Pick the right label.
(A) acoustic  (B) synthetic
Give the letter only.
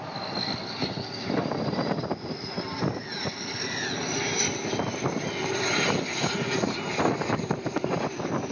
A